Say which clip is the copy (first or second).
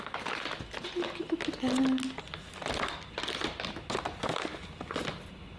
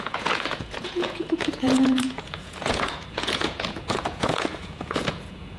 second